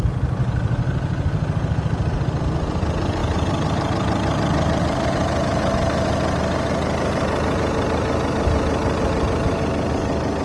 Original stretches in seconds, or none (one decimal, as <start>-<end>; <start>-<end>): 0.0-3.2; 5.1-10.4